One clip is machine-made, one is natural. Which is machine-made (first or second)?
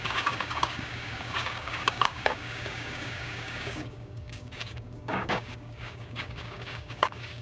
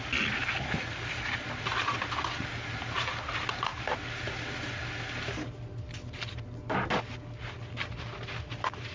first